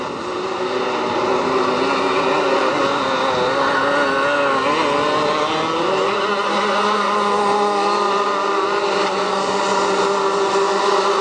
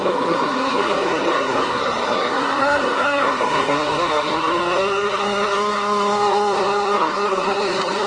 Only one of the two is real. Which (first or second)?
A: first